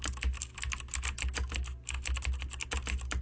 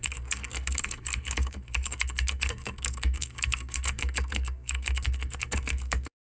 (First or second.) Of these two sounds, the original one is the first